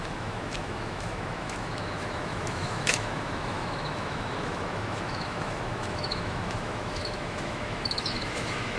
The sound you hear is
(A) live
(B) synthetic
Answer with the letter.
B